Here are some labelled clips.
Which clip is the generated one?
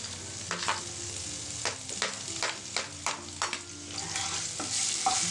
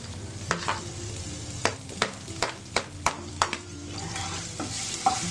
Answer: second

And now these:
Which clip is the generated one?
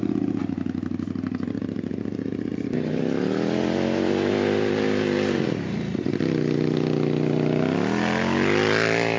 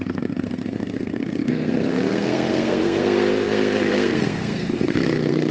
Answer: second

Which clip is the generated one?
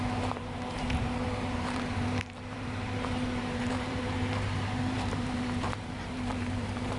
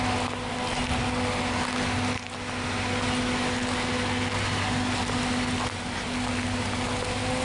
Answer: first